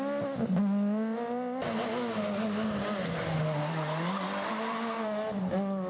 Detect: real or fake real